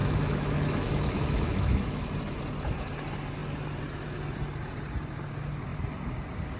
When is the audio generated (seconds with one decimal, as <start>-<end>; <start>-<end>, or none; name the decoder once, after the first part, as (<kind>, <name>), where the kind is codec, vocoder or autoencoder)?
0.0-2.1 (autoencoder, DAC-VAE)